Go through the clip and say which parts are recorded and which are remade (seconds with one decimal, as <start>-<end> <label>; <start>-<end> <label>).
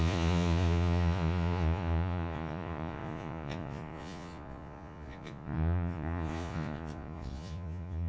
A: 0.0-8.1 remade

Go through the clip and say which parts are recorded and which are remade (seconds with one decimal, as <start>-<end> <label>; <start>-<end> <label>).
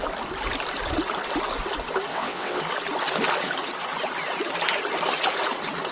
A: 0.0-2.1 recorded; 2.1-2.6 remade; 2.6-5.9 recorded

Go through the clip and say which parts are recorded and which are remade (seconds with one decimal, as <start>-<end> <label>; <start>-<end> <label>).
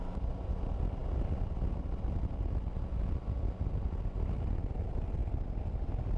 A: 0.0-6.2 recorded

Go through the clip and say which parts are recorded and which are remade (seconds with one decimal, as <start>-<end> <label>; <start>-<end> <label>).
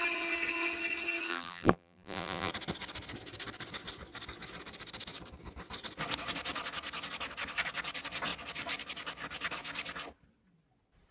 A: 0.0-1.3 recorded; 1.3-2.5 remade; 2.5-11.1 recorded